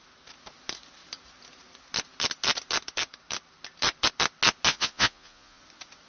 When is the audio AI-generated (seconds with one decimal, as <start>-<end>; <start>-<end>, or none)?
4.7-5.6